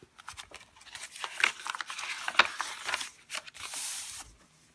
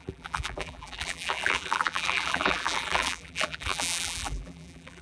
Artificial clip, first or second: second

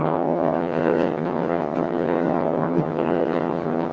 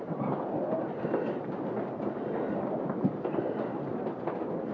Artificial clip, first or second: first